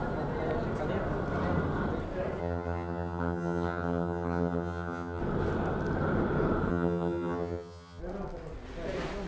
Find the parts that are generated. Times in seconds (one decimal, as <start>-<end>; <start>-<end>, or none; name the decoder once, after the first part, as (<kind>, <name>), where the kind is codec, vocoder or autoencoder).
2.4-5.2 (vocoder, HiFi-GAN); 6.7-8.0